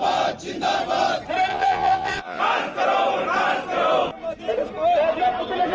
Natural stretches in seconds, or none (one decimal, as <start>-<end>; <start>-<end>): 0.0-1.5; 2.4-5.7